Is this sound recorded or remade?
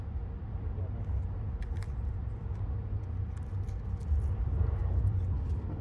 recorded